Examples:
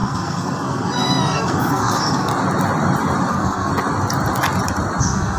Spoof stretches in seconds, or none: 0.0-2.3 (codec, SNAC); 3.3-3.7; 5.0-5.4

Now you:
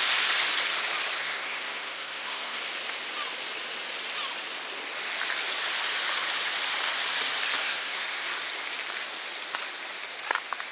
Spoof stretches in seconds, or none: 1.2-2.6 (codec, SNAC); 7.6-8.4

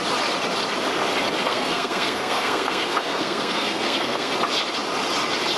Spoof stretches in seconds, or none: 1.4-4.3 (codec, SNAC)

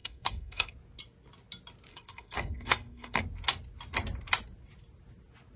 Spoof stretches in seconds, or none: 0.0-0.7 (codec, SNAC); 1.9-3.2

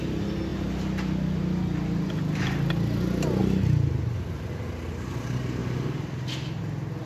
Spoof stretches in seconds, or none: none